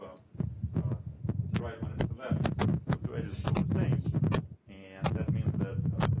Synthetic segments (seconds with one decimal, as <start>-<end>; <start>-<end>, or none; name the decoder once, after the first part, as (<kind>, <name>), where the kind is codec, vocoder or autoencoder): none

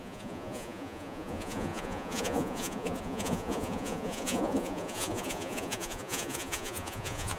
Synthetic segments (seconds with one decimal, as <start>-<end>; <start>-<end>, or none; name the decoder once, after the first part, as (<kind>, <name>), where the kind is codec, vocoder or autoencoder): 0.0-7.4 (vocoder, Vocos)